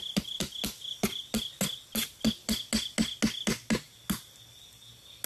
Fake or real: real